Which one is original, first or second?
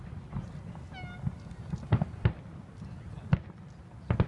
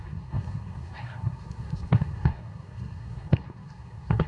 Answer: first